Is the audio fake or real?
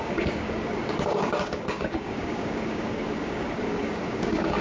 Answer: fake